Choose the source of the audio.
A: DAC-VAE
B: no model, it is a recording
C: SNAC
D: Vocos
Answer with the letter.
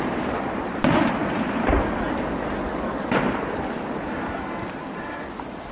B